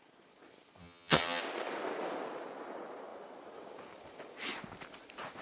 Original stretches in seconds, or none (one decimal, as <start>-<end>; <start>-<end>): 0.0-0.8; 1.4-5.4